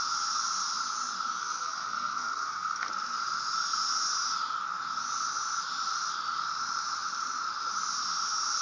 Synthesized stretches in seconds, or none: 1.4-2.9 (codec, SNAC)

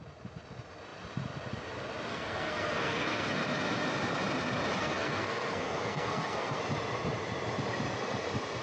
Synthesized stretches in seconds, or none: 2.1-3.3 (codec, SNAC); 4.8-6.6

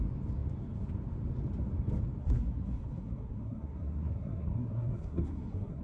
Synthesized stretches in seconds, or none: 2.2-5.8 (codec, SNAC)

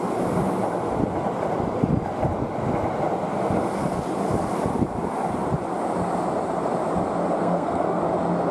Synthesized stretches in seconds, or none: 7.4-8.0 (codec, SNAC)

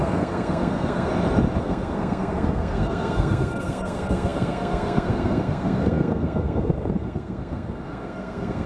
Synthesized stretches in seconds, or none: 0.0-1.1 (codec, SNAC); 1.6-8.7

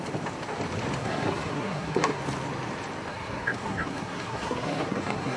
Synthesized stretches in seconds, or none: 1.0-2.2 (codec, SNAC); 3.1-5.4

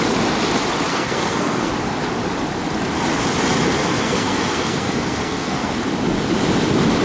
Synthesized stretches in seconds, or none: 0.9-1.7 (codec, SNAC); 3.8-5.7